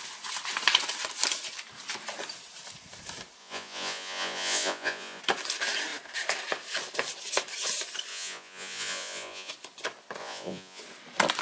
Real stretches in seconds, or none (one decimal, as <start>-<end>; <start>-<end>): 0.0-3.4; 5.2-8.1; 9.5-10.2; 10.8-11.4